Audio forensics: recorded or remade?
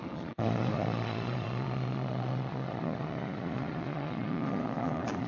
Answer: remade